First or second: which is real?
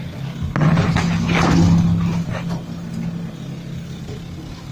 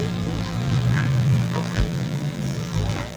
first